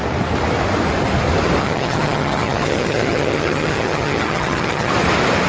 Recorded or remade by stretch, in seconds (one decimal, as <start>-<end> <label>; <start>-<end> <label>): 0.0-1.6 recorded; 1.6-4.9 remade; 4.9-5.5 recorded